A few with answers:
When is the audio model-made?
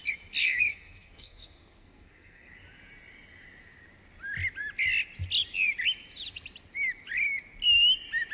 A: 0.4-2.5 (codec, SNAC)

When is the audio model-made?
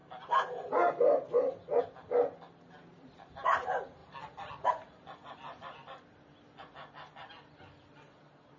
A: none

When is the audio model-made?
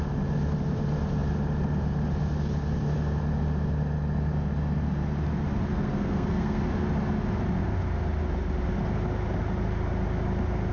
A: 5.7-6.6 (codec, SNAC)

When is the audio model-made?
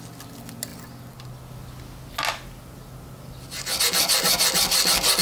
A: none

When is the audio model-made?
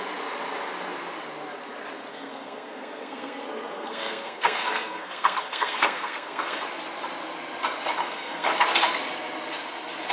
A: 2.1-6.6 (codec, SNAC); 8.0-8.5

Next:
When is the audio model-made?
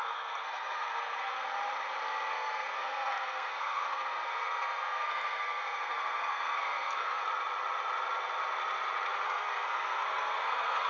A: 0.0-1.4 (codec, SNAC); 2.3-7.2; 9.2-10.9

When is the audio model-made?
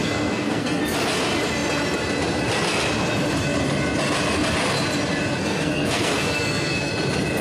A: 0.0-0.8 (codec, SNAC); 5.4-6.9